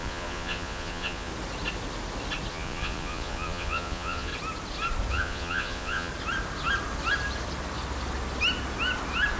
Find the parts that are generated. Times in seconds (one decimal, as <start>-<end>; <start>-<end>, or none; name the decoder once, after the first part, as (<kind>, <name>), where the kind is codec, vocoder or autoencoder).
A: 0.0-1.3 (vocoder, Vocos); 2.5-4.3; 5.1-6.1